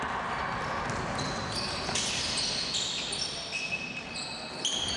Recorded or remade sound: recorded